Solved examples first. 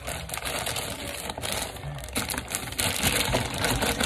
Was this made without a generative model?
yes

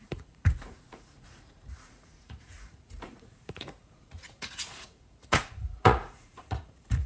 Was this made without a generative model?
no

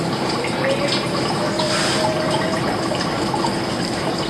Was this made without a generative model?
no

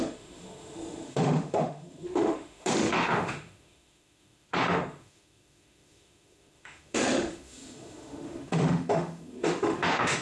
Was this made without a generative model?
no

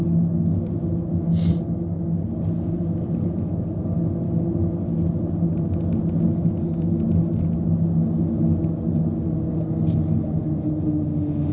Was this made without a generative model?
yes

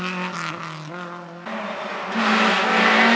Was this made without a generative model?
yes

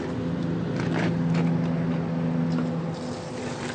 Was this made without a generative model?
yes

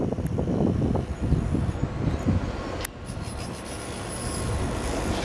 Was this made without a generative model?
yes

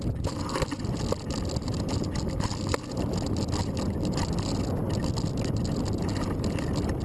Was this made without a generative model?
yes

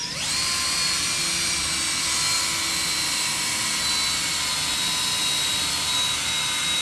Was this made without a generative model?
yes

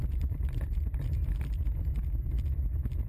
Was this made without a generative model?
no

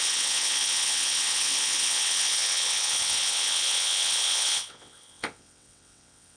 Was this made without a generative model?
no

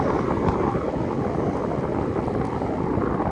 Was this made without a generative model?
yes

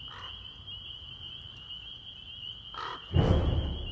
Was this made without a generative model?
yes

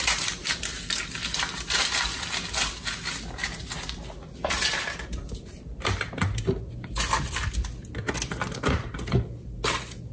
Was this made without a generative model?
yes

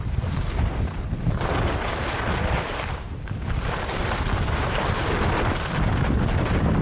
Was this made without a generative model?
yes